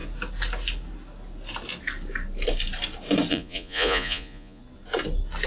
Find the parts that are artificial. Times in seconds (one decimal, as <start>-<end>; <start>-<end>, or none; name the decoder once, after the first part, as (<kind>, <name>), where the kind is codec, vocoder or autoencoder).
3.3-4.6 (vocoder, Vocos)